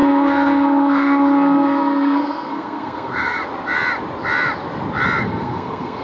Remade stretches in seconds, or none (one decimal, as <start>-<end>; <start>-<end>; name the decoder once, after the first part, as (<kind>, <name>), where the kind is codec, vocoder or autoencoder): 0.0-3.4 (codec, SNAC); 5.2-6.0

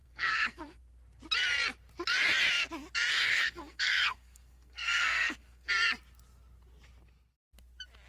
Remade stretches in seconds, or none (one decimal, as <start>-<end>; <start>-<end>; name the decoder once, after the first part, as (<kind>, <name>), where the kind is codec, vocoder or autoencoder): 0.0-0.8 (codec, SNAC); 3.1-5.7